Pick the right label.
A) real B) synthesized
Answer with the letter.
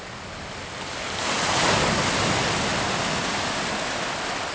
A